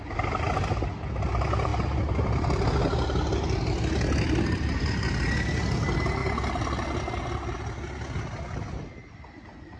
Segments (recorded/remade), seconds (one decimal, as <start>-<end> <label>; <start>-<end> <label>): 0.0-9.8 recorded